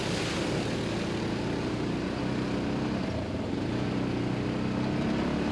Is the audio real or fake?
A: real